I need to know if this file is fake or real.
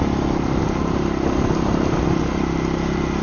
fake